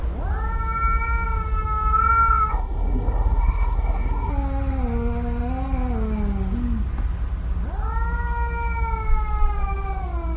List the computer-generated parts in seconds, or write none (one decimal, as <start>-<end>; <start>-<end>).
2.5-4.3